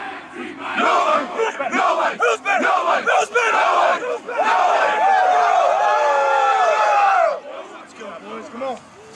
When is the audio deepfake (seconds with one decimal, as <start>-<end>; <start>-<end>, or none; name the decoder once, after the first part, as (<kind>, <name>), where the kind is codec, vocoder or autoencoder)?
1.0-1.6 (codec, DAC)

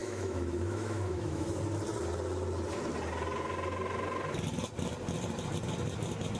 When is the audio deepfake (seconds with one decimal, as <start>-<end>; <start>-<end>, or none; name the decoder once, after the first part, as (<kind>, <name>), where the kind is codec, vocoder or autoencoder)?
0.0-1.6 (autoencoder, DAC-VAE)

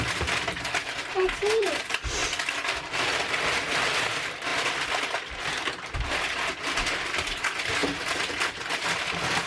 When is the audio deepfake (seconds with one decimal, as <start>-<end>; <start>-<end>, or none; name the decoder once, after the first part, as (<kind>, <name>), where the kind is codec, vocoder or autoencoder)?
0.0-2.2 (vocoder, BigVGAN v2); 4.0-7.8; 8.6-9.5

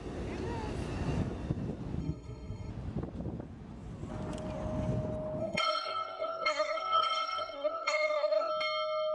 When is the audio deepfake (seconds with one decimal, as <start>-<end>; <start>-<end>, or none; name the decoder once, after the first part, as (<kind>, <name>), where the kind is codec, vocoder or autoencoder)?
2.0-2.7 (codec, SNAC); 5.4-8.5

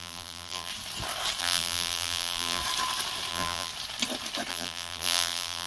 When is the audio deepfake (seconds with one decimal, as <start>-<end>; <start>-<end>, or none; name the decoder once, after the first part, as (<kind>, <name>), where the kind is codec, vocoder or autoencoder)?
0.0-0.7 (vocoder, BigVGAN v2); 1.4-2.6; 3.3-3.7; 4.5-5.7

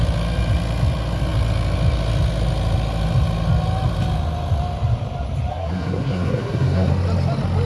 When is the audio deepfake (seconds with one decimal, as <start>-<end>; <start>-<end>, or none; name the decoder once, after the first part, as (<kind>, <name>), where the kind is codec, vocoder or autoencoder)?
5.5-6.9 (codec, SNAC)

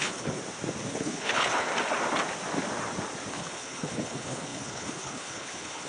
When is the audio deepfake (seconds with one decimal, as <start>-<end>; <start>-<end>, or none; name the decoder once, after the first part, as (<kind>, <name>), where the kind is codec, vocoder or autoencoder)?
0.0-0.4 (codec, HILCodec); 0.9-1.7; 3.3-5.9

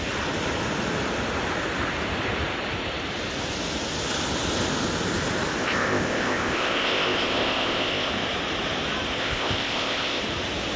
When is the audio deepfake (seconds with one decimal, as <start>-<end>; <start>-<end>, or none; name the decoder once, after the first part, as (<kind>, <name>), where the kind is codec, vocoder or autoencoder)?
5.6-8.1 (codec, ZipCodec); 9.2-10.2